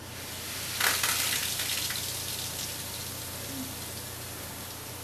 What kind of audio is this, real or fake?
real